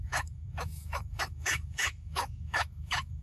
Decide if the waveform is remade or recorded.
remade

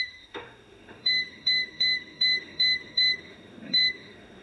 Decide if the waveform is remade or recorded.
remade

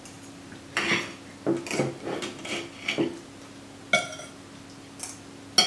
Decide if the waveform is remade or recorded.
recorded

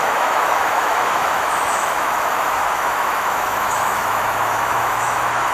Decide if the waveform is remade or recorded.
remade